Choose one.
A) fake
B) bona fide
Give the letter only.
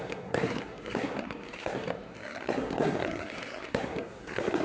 A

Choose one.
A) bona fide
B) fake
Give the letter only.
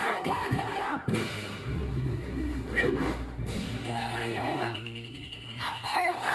B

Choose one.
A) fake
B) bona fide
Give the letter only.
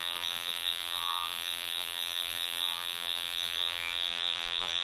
A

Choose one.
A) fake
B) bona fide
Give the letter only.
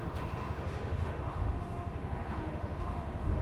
A